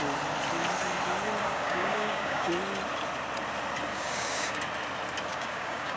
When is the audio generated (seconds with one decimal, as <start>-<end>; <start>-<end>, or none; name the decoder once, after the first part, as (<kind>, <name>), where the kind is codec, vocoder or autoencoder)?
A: 1.4-2.5 (codec, DAC); 3.9-4.6; 5.3-6.0